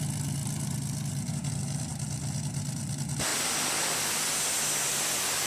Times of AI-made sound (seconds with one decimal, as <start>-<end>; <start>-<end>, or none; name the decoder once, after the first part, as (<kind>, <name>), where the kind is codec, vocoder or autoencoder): none